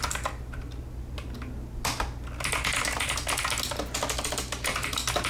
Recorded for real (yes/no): yes